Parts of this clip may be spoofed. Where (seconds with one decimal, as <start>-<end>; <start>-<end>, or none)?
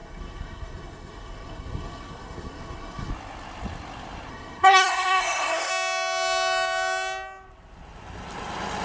0.0-3.1; 4.3-5.7